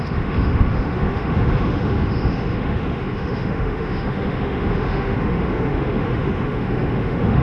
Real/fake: fake